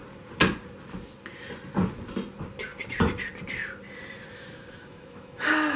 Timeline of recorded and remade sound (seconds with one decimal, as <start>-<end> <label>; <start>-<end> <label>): 0.0-4.3 recorded; 4.3-5.8 remade